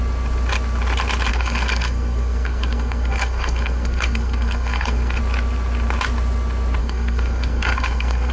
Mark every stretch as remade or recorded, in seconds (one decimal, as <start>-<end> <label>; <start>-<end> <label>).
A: 0.0-1.3 recorded; 1.3-5.2 remade; 5.2-6.8 recorded; 6.8-8.3 remade